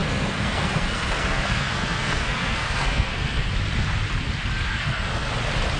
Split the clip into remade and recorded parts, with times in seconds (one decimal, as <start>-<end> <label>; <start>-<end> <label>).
0.0-3.5 remade; 3.5-4.7 recorded; 4.7-5.3 remade; 5.3-5.8 recorded